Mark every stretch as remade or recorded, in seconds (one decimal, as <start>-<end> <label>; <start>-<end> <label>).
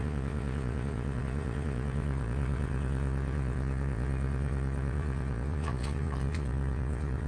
0.0-7.3 remade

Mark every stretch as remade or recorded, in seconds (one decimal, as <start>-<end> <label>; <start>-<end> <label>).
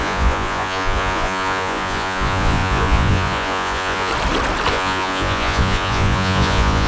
0.0-4.1 remade; 4.1-4.7 recorded; 4.7-6.9 remade